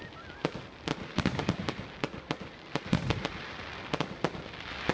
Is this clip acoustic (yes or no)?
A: yes